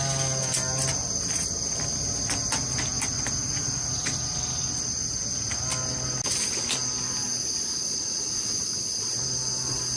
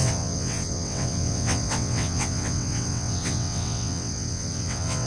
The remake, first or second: second